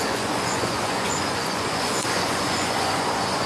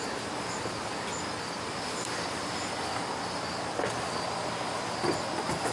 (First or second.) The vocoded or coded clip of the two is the first